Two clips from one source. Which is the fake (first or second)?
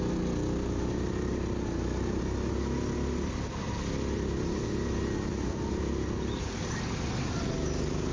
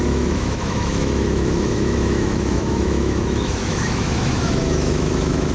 second